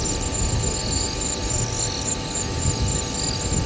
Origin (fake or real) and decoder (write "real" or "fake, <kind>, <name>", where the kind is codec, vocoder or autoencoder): real